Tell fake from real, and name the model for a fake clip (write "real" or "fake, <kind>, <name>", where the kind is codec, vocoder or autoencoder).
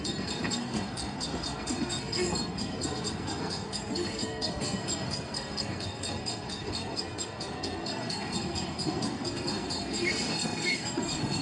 fake, codec, SNAC